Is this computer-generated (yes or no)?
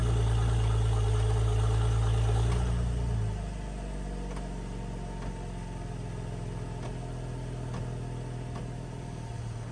no